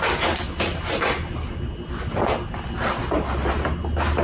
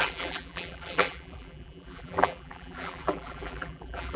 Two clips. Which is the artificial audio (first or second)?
second